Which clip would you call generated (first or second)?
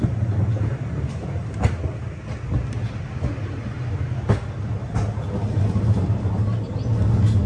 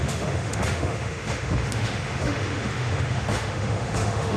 second